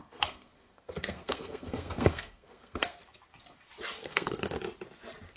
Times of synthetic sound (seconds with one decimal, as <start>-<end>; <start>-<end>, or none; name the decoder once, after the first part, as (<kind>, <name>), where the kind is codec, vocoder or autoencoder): 0.0-3.0 (codec, SNAC); 4.0-4.6